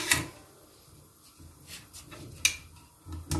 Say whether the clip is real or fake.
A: real